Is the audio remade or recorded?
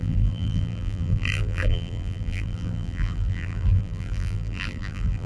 remade